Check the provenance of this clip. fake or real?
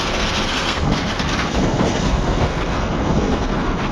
fake